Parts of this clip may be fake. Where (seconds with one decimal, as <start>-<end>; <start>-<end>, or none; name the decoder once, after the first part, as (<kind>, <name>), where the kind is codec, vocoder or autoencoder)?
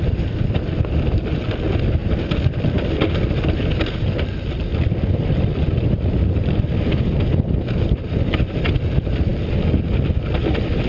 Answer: 2.0-3.1 (vocoder, BigVGAN v2); 4.7-5.6